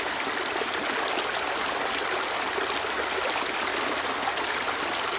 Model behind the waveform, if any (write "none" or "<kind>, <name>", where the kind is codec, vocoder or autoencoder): none